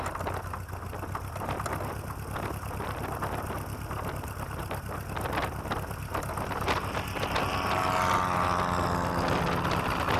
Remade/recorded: recorded